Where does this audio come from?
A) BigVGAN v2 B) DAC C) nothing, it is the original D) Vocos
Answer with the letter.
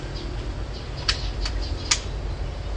C